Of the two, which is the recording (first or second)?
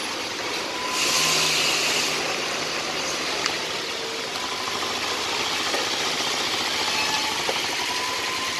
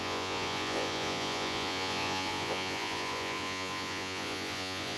first